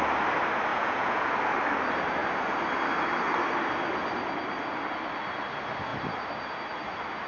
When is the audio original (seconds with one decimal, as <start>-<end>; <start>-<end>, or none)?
0.0-0.7; 1.3-7.3